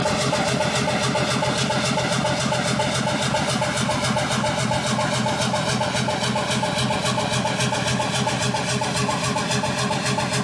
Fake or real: real